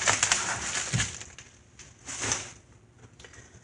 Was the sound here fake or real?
real